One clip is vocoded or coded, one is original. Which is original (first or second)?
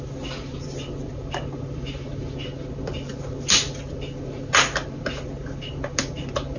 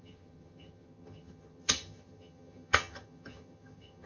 first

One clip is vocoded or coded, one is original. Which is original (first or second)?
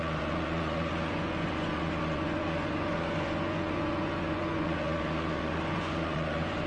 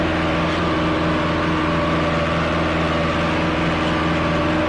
second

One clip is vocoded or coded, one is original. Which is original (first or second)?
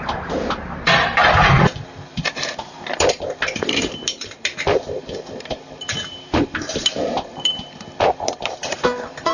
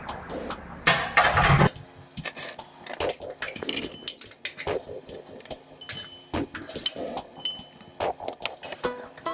second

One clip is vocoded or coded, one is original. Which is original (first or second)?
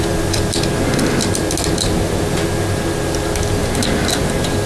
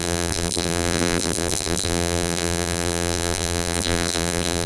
first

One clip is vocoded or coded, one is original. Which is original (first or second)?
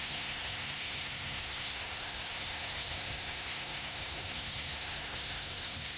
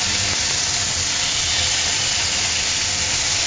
second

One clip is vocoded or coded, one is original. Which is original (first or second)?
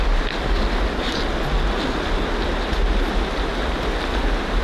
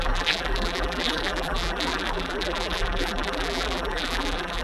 first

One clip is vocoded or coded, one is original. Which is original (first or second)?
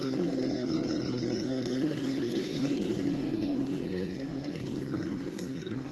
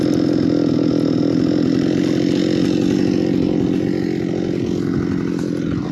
second